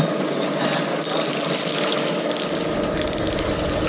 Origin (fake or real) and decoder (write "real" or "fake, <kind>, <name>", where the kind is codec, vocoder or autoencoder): real